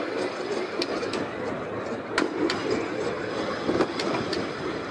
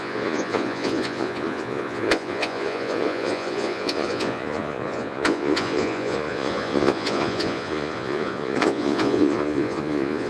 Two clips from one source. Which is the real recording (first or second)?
first